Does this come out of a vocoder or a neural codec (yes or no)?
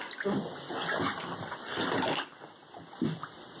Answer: no